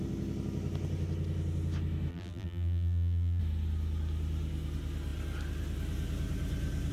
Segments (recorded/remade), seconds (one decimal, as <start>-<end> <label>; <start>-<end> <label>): 0.0-2.1 recorded; 2.1-3.4 remade; 3.4-6.9 recorded